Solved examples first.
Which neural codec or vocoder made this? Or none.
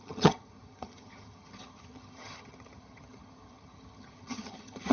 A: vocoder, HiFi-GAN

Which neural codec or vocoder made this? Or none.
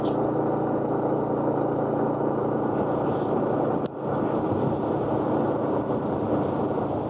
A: none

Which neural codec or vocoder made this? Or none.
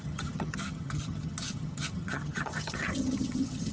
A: vocoder, HiFi-GAN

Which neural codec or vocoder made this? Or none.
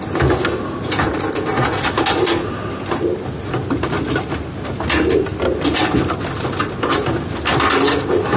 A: none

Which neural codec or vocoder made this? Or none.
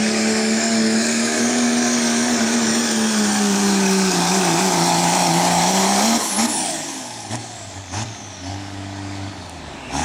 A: codec, DAC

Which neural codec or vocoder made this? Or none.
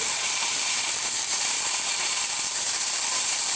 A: vocoder, BigVGAN v2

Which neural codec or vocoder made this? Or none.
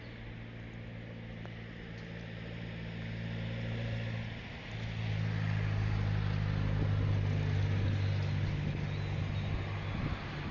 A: none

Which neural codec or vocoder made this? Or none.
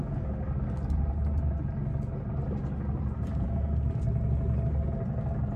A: none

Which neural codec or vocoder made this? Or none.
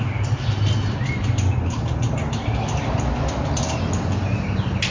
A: none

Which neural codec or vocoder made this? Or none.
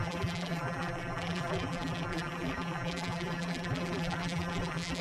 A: vocoder, BigVGAN v2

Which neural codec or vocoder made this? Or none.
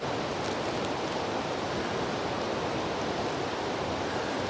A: none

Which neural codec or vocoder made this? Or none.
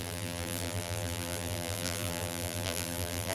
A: vocoder, BigVGAN v2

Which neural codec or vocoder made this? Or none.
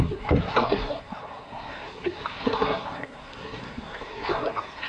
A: codec, SNAC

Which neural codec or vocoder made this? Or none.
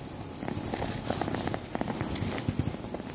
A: none